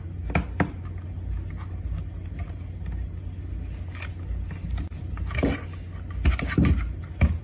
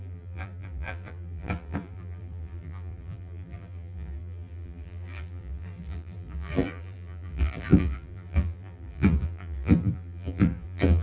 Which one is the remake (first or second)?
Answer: second